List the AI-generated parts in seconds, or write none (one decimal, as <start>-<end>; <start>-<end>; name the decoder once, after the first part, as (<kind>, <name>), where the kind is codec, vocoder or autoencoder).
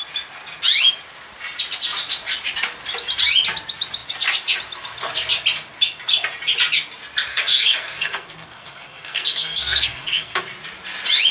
7.3-10.4 (codec, SNAC)